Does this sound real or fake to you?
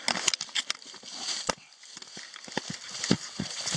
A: real